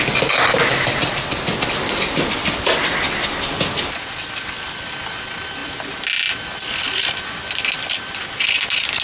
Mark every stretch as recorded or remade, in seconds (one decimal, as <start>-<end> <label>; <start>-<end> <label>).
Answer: 0.0-0.7 recorded; 0.7-1.3 remade; 1.3-9.0 recorded